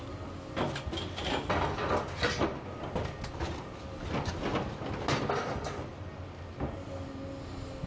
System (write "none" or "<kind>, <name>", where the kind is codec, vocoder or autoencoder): none